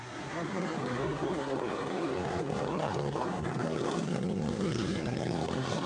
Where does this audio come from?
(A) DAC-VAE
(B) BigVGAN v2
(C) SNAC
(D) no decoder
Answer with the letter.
C